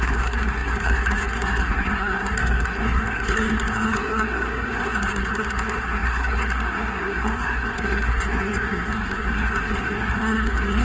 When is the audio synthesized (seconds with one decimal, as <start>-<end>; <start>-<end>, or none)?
0.0-10.8